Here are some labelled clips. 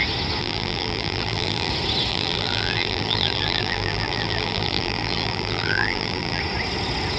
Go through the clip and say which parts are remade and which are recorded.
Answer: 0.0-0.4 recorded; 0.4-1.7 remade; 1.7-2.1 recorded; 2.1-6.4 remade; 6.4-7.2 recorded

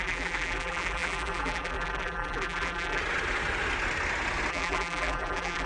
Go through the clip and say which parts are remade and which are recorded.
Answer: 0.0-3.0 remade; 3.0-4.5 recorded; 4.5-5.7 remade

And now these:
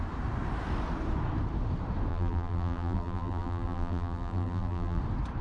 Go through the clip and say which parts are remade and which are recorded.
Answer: 0.0-2.1 recorded; 2.1-5.0 remade; 5.0-5.4 recorded

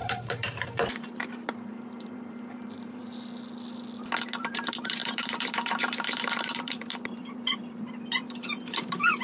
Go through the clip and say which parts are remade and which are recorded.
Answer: 0.0-3.0 remade; 3.0-4.4 recorded; 4.4-9.2 remade

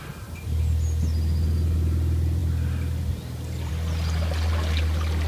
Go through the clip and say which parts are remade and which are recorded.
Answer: 0.0-5.3 recorded